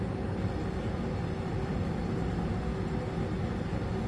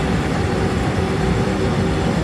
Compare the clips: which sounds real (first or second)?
first